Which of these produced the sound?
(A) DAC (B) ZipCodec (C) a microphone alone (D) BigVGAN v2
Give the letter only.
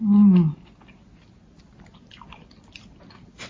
C